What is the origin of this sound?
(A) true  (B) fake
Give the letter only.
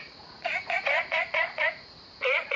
B